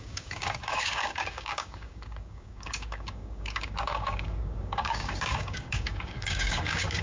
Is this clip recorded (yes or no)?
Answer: no